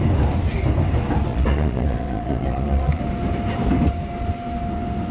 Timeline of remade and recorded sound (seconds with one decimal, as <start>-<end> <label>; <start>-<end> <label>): 0.0-1.3 recorded; 1.3-3.0 remade; 3.0-5.1 recorded

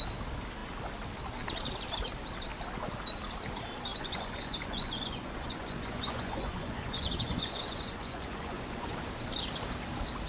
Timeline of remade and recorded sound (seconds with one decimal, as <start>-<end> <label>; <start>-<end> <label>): 0.0-3.9 recorded; 3.9-8.9 remade; 8.9-10.3 recorded